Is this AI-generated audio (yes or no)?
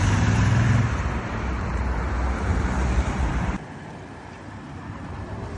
yes